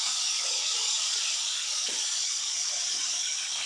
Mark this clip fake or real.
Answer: fake